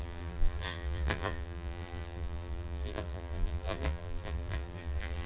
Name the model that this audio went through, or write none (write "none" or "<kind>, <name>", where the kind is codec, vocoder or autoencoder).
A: vocoder, BigVGAN v2